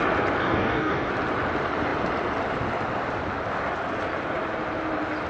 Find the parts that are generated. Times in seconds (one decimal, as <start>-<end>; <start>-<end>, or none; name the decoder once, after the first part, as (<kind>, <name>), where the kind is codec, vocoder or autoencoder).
0.4-1.1 (codec, DAC)